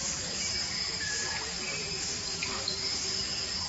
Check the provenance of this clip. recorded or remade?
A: recorded